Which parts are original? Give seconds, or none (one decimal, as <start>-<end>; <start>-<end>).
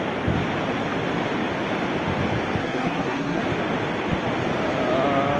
0.0-2.6; 3.4-5.4